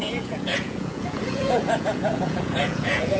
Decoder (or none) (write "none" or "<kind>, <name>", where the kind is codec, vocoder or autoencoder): vocoder, Vocos